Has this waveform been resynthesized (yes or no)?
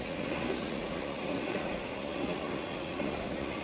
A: yes